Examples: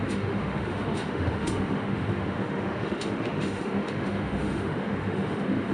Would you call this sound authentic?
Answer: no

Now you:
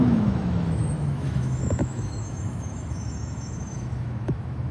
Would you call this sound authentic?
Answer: no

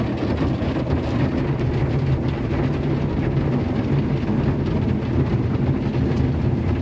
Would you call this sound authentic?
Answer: yes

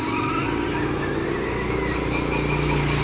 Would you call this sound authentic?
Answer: yes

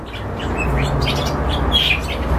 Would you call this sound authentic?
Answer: yes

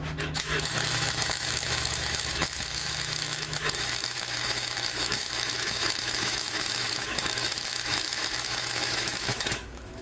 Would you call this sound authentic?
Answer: no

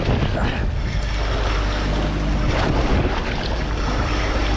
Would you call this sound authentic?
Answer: yes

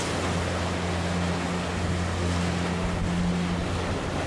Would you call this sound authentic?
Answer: yes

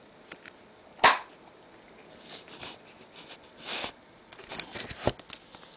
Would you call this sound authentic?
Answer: yes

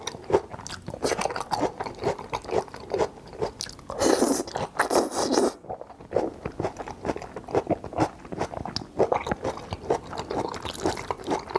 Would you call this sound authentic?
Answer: yes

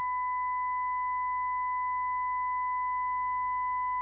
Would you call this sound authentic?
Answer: no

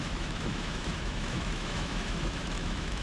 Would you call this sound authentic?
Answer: no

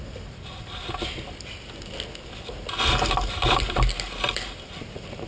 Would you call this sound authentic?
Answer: yes